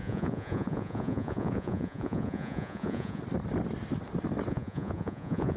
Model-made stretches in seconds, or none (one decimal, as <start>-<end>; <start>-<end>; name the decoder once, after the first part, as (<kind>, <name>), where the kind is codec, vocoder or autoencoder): 0.0-3.2 (vocoder, Vocos); 4.5-5.6